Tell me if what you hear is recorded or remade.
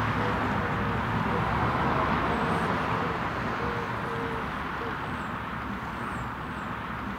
recorded